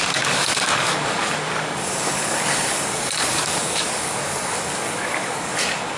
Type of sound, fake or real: fake